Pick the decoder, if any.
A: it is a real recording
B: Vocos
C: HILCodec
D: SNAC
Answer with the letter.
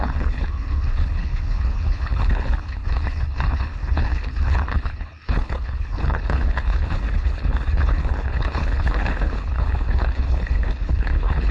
C